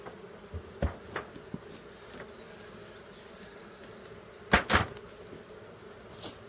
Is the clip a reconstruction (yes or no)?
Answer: no